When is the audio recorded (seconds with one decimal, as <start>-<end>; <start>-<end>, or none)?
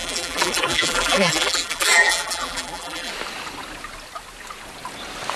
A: 3.1-5.4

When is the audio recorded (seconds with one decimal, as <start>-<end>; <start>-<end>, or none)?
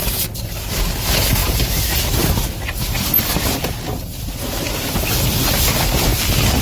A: 0.0-6.6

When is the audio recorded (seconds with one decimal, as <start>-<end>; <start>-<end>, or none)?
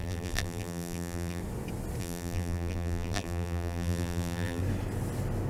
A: 1.4-2.0; 4.6-5.5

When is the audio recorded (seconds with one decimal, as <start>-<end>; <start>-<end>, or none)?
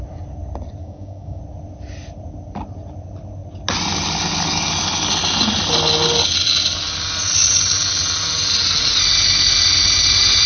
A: 0.0-0.8; 1.4-10.5